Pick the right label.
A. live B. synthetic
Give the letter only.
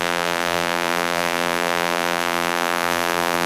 B